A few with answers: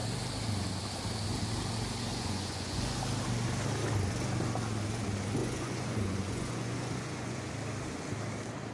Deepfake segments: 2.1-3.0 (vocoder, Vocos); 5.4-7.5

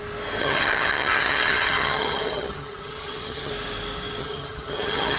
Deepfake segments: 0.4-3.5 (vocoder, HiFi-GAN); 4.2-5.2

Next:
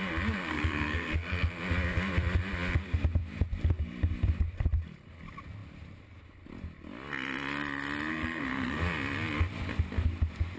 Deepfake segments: 0.5-1.5 (codec, SNAC); 8.1-8.8